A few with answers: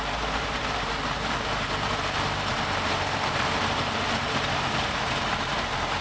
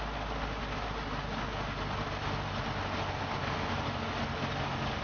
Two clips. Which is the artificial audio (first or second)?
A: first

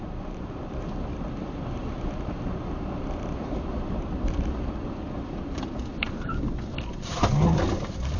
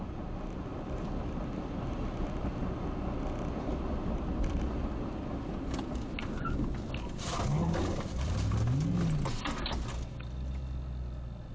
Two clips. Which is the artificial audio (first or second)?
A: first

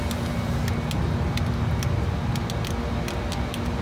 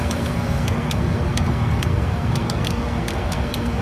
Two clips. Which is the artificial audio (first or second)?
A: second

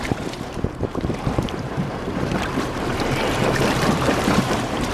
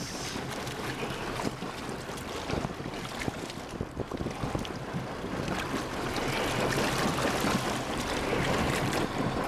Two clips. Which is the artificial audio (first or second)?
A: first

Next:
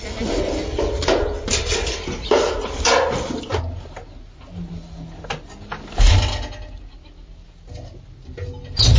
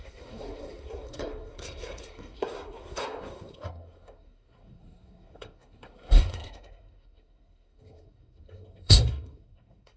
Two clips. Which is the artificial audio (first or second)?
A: second